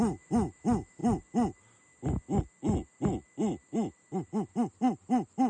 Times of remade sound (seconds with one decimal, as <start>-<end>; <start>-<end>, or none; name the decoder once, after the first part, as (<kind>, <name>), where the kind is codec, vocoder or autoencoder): none